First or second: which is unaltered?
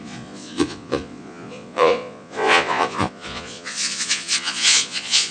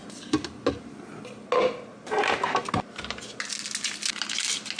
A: second